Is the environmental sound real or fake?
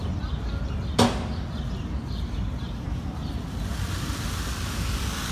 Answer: real